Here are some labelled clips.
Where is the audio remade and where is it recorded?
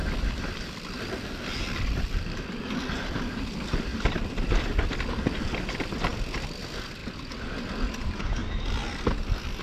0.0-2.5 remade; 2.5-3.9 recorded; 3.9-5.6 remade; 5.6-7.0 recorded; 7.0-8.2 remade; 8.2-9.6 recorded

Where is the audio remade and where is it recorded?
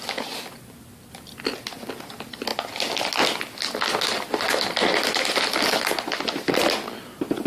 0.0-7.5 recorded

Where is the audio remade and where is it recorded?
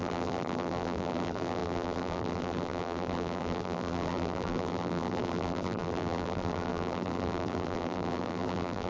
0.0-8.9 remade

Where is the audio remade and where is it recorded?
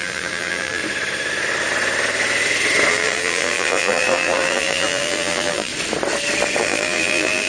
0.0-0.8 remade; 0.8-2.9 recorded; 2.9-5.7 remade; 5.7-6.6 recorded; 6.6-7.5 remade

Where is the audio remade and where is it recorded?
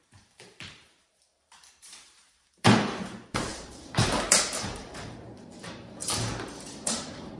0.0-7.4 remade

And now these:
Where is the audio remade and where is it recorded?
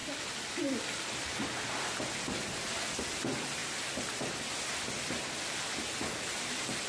0.0-6.9 recorded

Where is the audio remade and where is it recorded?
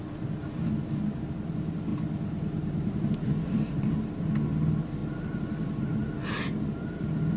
0.0-1.9 recorded; 1.9-3.9 remade; 3.9-7.4 recorded